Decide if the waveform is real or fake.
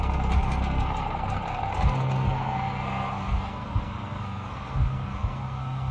fake